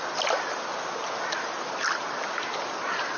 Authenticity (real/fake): real